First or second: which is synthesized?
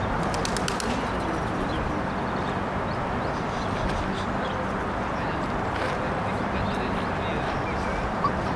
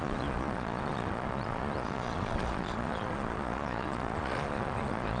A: second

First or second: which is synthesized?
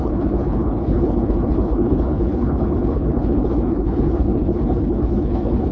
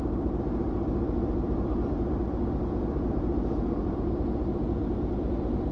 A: first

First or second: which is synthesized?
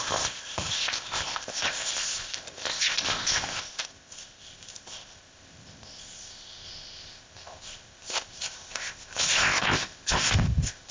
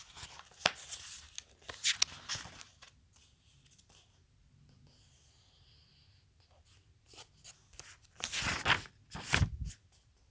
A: first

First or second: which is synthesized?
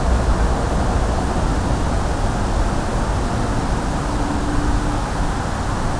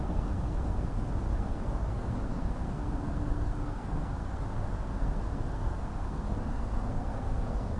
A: second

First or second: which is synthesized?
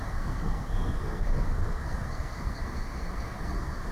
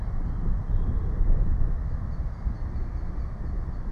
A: first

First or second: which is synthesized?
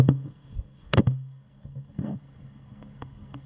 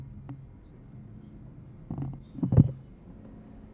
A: first